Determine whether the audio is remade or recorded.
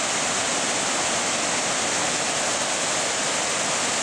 recorded